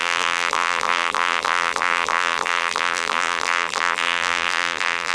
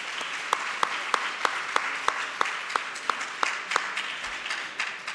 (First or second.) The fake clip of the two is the first